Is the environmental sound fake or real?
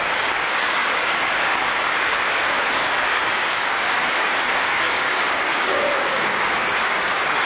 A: fake